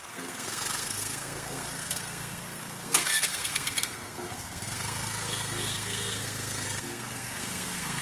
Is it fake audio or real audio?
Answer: fake